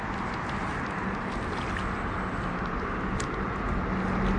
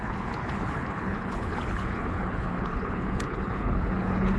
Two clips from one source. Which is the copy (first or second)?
second